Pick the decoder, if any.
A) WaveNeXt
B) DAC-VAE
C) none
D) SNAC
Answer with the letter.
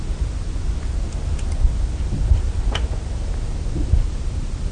C